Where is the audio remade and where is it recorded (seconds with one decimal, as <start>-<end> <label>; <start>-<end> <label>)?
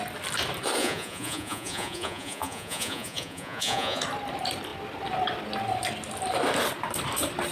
0.0-0.8 recorded; 0.8-4.0 remade; 4.0-7.5 recorded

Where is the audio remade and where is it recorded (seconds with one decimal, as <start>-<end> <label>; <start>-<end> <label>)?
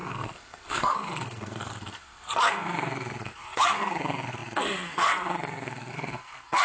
0.0-6.6 remade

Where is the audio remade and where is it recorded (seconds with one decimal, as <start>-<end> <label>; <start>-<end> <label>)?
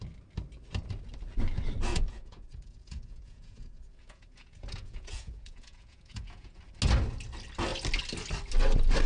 0.0-1.9 recorded; 1.9-6.6 remade; 6.6-9.1 recorded